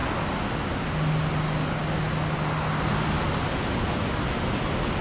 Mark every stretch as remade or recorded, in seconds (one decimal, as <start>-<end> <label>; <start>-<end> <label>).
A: 0.0-5.0 recorded